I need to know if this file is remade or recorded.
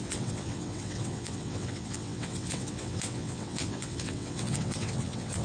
remade